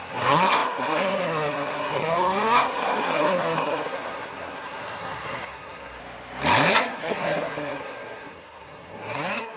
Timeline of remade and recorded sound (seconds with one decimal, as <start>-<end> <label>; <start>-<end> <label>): 0.0-6.0 remade; 6.0-6.7 recorded; 6.7-9.6 remade